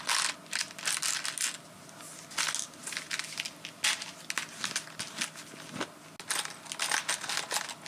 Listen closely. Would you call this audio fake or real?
real